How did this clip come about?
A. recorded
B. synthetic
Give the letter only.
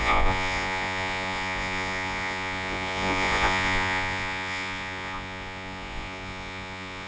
B